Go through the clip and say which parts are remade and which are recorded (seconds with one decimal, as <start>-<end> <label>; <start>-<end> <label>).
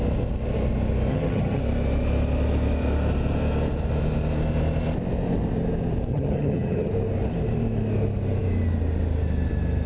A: 0.0-1.1 recorded; 1.1-1.6 remade; 1.6-6.1 recorded; 6.1-6.9 remade; 6.9-9.9 recorded